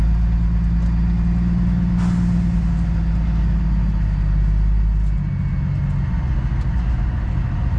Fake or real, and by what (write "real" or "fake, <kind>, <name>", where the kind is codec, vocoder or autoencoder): real